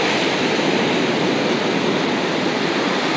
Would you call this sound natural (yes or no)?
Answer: yes